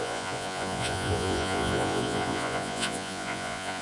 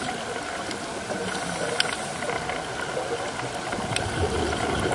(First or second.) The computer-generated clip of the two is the first